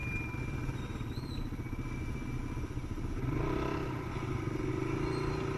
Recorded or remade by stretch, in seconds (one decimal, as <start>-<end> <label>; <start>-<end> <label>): 0.0-5.6 recorded